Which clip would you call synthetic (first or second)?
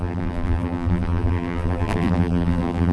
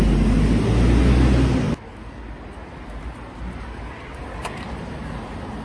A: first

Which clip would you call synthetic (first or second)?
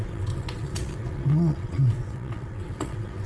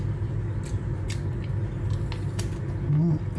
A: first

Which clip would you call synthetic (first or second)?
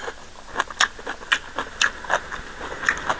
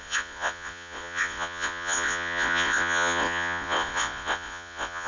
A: second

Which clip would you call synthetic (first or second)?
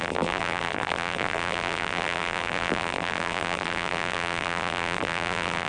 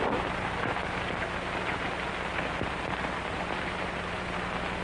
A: first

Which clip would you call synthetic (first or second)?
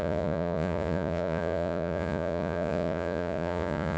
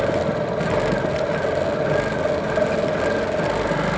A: first